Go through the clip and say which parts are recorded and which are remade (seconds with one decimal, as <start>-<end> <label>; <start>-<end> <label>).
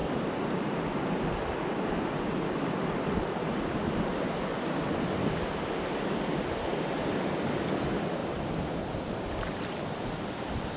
0.0-10.8 recorded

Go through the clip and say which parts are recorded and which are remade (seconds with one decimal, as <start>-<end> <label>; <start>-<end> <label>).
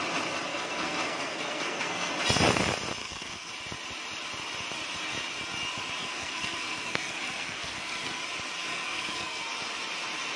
0.0-0.5 recorded; 0.5-2.1 remade; 2.1-3.0 recorded; 3.0-3.5 remade; 3.5-6.0 recorded; 6.0-8.2 remade; 8.2-8.7 recorded; 8.7-9.4 remade; 9.4-10.4 recorded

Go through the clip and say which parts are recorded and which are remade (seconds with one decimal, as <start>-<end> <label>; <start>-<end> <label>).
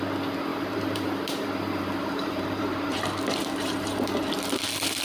0.0-0.5 recorded; 0.5-3.0 remade; 3.0-3.4 recorded; 3.4-4.1 remade; 4.1-5.0 recorded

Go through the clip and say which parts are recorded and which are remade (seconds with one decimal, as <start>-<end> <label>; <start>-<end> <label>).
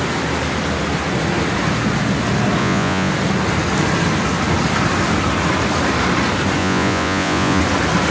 0.0-2.6 recorded; 2.6-3.1 remade; 3.1-6.6 recorded; 6.6-7.6 remade; 7.6-8.1 recorded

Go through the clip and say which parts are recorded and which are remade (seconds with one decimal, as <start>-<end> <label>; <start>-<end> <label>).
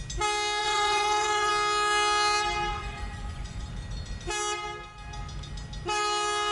0.0-0.6 recorded; 0.6-1.5 remade; 1.5-2.7 recorded; 2.7-3.7 remade; 3.7-6.5 recorded